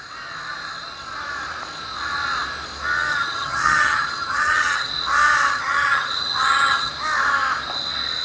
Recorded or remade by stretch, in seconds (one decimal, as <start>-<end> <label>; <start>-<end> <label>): 0.0-3.1 recorded; 3.1-4.9 remade; 4.9-5.5 recorded; 5.5-6.9 remade; 6.9-8.2 recorded